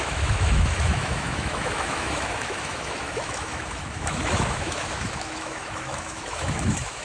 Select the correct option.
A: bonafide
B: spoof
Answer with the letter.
B